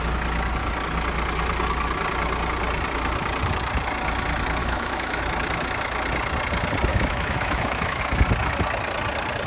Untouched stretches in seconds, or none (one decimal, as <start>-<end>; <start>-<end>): 0.0-4.6; 5.2-6.9; 8.0-9.5